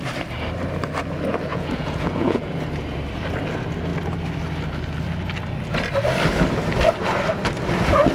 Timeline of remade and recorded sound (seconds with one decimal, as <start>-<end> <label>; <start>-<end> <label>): 0.0-1.5 recorded; 1.5-2.5 remade; 2.5-8.1 recorded